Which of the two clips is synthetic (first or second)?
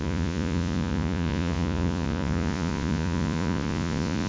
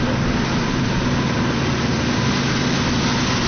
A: first